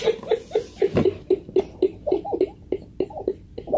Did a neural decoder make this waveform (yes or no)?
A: no